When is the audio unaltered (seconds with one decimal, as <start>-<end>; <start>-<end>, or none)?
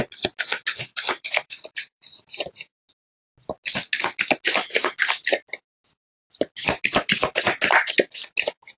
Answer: 0.0-0.9; 2.6-8.8